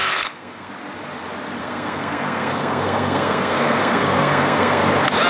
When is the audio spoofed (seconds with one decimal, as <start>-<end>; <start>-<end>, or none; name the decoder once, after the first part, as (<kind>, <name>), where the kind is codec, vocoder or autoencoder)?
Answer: 0.0-0.7 (codec, SNAC); 1.6-4.8